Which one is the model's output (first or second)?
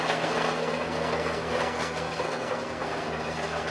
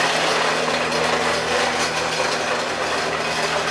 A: first